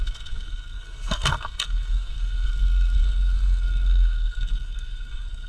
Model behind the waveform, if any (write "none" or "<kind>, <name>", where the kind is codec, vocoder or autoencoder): codec, SNAC